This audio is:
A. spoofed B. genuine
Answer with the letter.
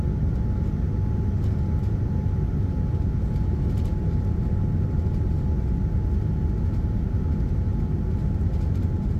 B